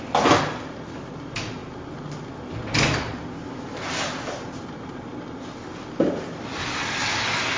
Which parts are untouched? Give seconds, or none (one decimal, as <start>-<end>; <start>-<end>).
0.0-7.6